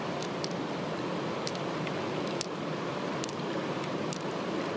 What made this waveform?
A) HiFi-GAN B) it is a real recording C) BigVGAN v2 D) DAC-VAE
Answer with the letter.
B